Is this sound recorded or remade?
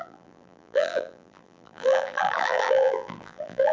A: remade